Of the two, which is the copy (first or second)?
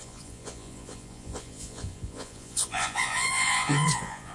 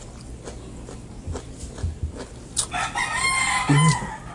first